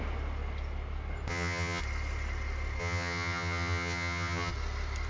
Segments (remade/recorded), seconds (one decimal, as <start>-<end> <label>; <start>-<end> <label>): 0.0-1.3 recorded; 1.3-1.8 remade; 1.8-2.8 recorded; 2.8-4.5 remade; 4.5-5.1 recorded